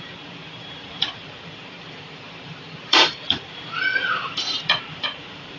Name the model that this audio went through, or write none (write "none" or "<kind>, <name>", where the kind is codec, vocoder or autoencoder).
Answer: vocoder, BigVGAN v2